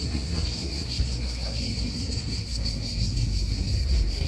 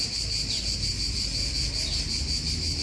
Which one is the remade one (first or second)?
first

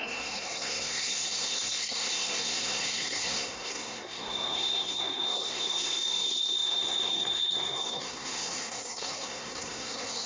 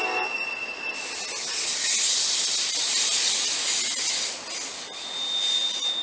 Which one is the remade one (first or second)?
first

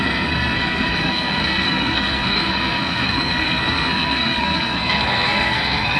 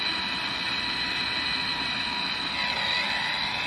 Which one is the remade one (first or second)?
first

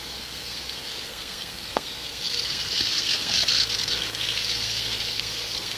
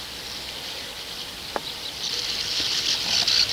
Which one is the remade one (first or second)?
first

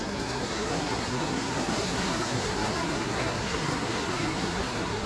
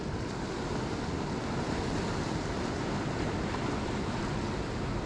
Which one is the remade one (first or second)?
first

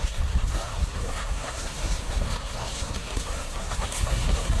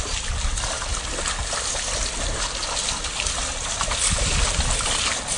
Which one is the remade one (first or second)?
first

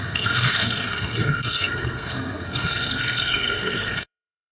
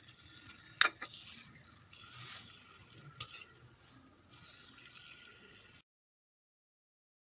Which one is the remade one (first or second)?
first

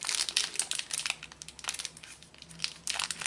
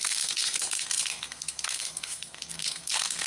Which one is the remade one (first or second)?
second